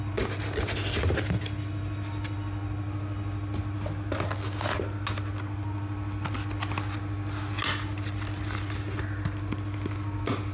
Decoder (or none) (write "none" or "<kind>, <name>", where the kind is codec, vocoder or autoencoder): none